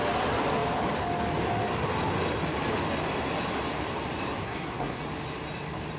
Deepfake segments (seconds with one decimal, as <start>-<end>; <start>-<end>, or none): 4.4-5.0